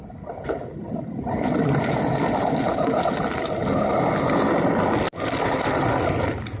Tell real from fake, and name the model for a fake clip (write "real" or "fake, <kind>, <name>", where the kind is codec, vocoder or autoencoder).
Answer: real